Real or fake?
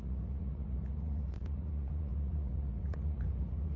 fake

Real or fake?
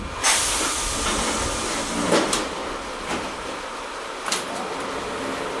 real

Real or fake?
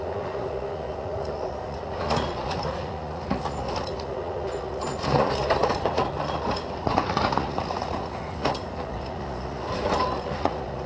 fake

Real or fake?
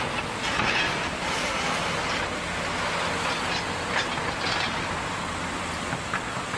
real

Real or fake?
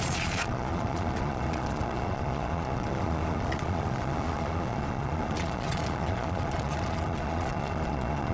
fake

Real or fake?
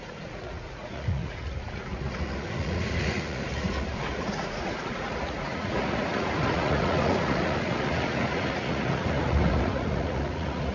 fake